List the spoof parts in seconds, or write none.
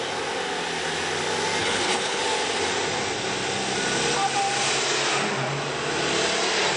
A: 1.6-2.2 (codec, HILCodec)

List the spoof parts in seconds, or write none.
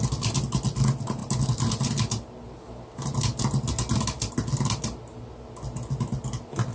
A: none